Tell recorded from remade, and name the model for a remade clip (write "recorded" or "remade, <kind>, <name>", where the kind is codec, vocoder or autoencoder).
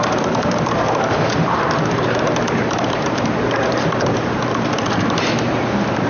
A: remade, vocoder, BigVGAN v2